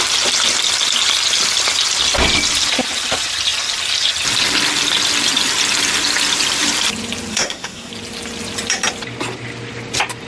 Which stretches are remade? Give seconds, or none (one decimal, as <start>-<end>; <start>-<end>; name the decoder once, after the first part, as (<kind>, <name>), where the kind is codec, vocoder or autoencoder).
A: 7.3-7.9 (codec, SNAC)